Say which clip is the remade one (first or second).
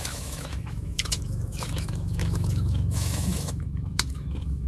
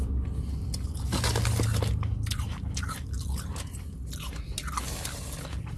first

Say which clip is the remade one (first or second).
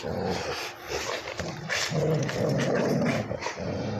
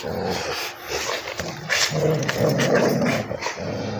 first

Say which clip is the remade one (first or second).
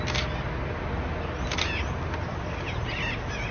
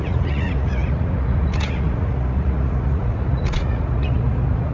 second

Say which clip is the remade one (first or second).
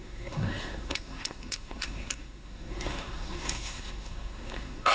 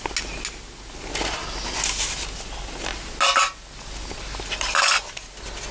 first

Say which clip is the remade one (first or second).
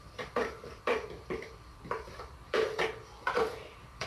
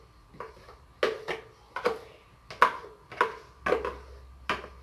first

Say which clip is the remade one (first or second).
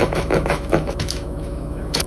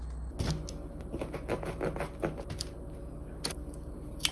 first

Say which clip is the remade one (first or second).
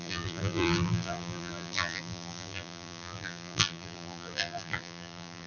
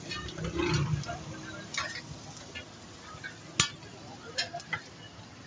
first